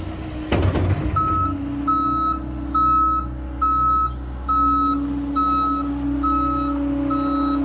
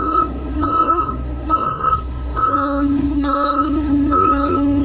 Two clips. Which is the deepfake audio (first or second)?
second